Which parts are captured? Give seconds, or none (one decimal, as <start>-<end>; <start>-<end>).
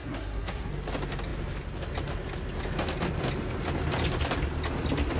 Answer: 0.7-5.2